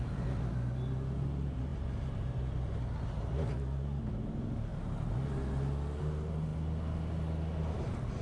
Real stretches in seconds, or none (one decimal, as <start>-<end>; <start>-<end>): 0.0-8.2